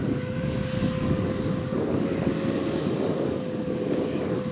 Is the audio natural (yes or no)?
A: no